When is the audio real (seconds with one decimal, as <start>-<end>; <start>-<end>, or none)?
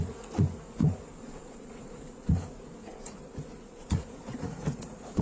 none